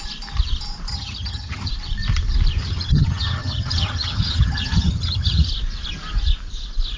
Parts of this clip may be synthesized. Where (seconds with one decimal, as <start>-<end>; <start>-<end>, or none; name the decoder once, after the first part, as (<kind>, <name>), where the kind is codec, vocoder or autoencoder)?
0.9-1.7 (vocoder, HiFi-GAN); 2.6-5.5